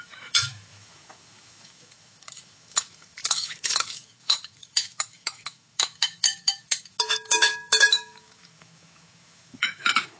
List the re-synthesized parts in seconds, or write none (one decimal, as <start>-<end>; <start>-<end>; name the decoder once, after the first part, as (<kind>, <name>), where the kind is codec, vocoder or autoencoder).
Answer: 0.0-10.2 (autoencoder, DAC-VAE)